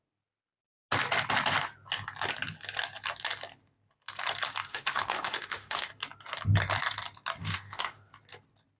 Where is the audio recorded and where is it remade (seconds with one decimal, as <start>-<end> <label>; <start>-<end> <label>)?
0.0-4.7 recorded; 4.7-5.9 remade; 5.9-7.4 recorded; 7.4-8.1 remade; 8.1-8.8 recorded